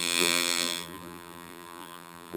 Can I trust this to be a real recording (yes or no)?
no